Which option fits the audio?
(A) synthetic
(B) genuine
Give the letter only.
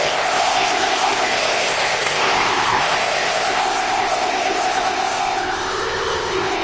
A